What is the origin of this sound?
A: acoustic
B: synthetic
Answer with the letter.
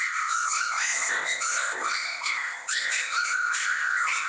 B